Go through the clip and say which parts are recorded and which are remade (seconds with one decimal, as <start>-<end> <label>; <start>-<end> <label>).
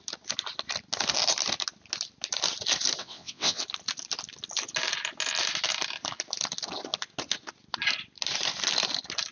0.0-3.0 recorded; 3.0-3.6 remade; 3.6-9.3 recorded